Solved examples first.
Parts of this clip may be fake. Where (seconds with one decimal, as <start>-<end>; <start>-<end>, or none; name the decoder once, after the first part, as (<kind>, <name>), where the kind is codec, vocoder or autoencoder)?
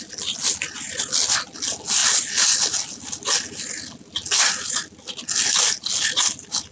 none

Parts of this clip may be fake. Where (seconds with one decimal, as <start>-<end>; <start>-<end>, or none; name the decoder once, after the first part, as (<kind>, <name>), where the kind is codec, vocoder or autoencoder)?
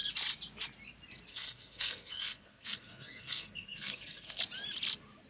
1.3-4.4 (codec, SNAC)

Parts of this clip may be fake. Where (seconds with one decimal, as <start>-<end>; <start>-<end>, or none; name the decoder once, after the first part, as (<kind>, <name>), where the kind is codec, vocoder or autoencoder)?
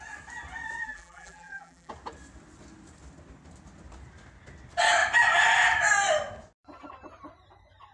0.8-1.9 (vocoder, BigVGAN v2)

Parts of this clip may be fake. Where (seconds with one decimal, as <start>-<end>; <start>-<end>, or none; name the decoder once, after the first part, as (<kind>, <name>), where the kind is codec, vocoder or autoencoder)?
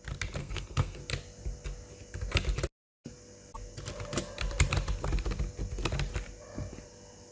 0.4-1.0 (codec, SNAC)